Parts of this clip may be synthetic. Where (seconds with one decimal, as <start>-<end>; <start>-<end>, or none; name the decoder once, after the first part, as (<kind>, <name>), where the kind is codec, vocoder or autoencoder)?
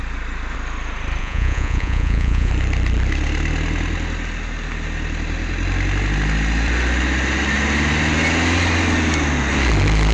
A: 1.2-2.5 (vocoder, Vocos)